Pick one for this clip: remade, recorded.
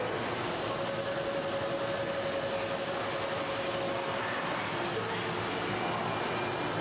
recorded